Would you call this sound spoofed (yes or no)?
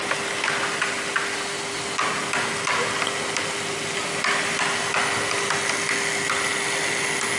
no